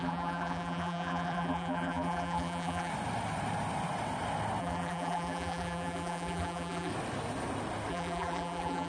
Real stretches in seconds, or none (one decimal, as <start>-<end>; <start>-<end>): 2.9-4.6; 6.9-7.9